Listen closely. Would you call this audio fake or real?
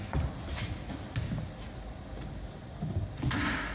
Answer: real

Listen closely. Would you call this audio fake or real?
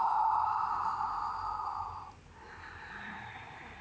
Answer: real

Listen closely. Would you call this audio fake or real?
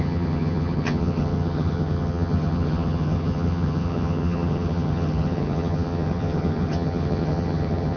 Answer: fake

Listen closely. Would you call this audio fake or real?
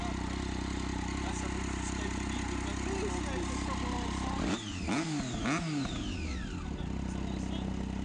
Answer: real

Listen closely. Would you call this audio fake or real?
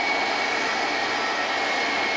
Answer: real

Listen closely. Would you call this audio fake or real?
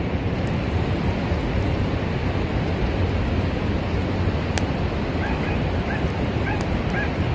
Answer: real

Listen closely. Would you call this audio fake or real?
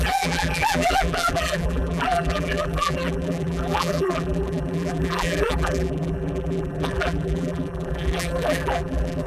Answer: fake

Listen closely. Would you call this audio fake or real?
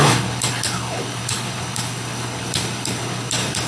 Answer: fake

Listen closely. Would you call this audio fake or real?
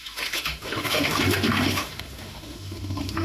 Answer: fake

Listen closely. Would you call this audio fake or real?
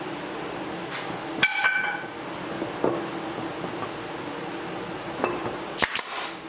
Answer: real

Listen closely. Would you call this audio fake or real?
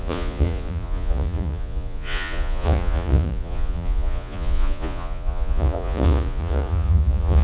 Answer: fake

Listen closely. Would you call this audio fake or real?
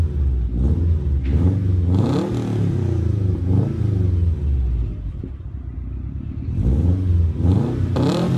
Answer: real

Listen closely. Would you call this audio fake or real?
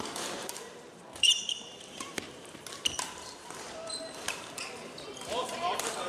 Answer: fake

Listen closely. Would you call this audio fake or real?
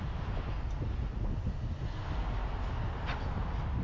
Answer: real